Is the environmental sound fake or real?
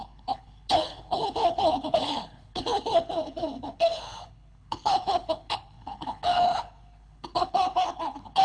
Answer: fake